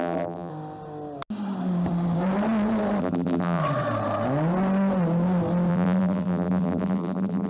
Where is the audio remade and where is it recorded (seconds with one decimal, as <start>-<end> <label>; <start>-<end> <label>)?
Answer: 0.0-0.5 remade; 0.5-3.0 recorded; 3.0-3.6 remade; 3.6-5.7 recorded; 5.7-7.5 remade